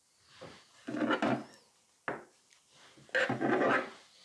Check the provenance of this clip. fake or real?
real